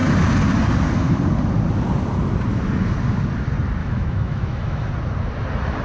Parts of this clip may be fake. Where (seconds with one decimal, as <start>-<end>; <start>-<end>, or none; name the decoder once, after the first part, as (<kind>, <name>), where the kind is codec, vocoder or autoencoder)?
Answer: 3.8-4.9 (autoencoder, DAC-VAE)